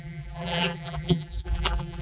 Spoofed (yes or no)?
yes